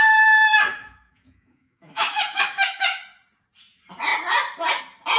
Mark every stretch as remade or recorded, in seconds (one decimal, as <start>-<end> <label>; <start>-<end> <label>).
0.0-0.7 recorded; 0.7-3.0 remade; 3.0-5.2 recorded